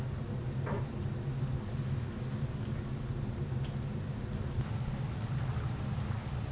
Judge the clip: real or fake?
real